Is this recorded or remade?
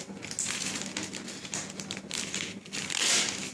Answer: recorded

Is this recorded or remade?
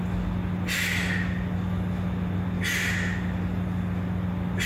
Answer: recorded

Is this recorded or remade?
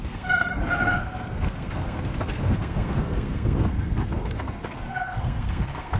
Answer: remade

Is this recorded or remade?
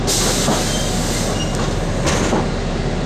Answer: recorded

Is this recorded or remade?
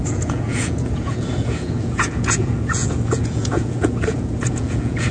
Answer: remade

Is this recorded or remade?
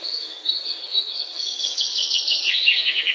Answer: remade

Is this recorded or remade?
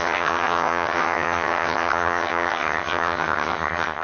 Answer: remade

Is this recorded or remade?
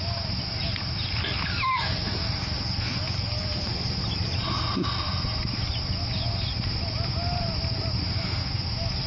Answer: recorded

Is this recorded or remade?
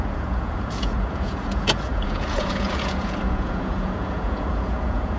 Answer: remade